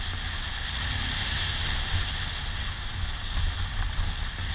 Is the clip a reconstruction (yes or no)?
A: no